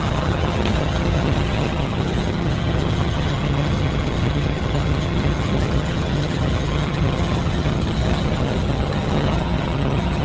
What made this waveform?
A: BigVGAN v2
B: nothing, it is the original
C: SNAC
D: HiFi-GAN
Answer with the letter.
D